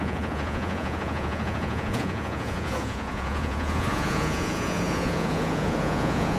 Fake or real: fake